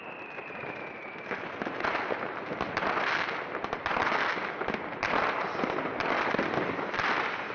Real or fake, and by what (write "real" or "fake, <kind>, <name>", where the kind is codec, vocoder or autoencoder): real